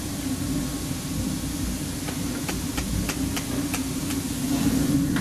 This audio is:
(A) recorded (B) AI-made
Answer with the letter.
A